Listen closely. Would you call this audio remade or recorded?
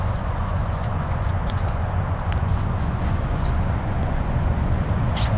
remade